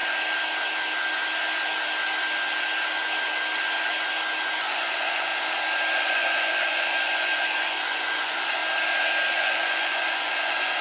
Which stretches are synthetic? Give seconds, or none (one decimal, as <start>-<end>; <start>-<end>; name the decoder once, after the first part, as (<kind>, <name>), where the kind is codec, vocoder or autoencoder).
4.6-5.3 (vocoder, Vocos); 6.0-8.6; 9.3-10.8